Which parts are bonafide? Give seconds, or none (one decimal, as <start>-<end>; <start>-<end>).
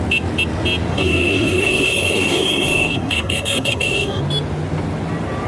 0.0-0.9; 4.2-5.5